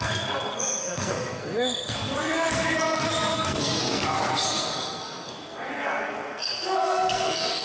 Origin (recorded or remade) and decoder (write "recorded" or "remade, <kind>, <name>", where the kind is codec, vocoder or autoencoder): remade, codec, SNAC